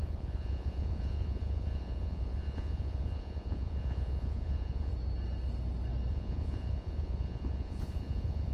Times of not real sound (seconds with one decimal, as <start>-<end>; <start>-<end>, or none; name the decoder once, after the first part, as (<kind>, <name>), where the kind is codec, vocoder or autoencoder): 0.0-4.9 (vocoder, Vocos); 6.1-8.5